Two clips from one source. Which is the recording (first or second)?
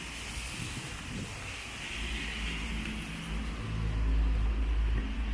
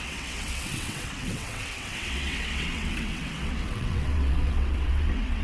first